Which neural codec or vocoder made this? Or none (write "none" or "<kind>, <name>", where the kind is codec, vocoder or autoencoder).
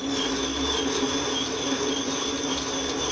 none